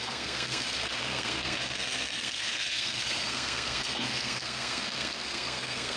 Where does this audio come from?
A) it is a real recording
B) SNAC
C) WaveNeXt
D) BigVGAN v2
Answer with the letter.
B